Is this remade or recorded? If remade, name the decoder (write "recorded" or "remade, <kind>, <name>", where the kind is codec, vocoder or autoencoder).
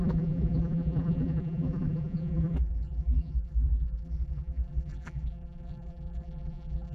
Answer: remade, vocoder, BigVGAN v2